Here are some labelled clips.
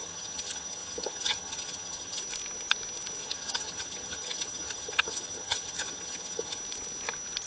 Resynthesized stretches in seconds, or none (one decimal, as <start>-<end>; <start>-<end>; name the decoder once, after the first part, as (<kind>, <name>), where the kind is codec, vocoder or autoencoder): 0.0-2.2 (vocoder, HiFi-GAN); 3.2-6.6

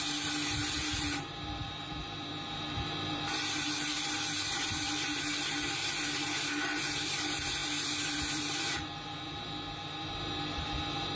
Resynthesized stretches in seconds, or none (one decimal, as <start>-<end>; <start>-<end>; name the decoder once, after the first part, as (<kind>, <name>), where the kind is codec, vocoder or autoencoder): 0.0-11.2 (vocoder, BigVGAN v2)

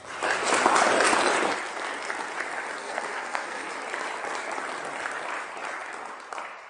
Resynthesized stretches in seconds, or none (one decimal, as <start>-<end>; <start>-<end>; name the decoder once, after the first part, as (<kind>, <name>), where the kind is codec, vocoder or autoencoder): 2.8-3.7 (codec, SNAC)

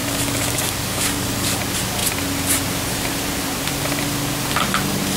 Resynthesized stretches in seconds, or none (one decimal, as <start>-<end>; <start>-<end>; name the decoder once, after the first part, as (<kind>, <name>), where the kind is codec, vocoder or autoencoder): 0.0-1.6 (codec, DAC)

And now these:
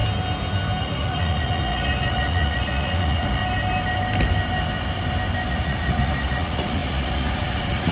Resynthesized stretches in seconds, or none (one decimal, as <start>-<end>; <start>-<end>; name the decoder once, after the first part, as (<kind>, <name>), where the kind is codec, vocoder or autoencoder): 0.8-3.4 (vocoder, Vocos); 5.5-7.9